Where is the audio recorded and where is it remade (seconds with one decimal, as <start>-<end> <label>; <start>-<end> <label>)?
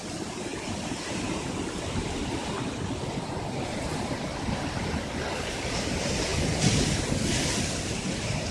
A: 0.0-8.5 recorded